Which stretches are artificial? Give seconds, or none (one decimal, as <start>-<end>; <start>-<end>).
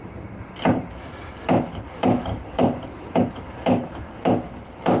2.3-3.3